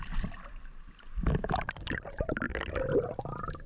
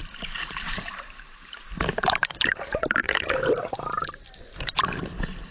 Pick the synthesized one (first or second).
second